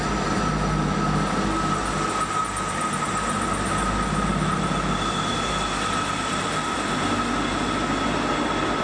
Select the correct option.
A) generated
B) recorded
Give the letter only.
B